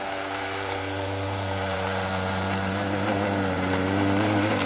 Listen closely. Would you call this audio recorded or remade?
remade